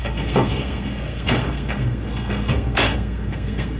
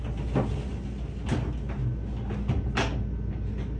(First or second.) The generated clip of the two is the first